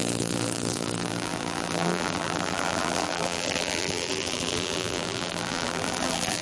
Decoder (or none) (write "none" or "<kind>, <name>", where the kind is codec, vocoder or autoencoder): vocoder, BigVGAN v2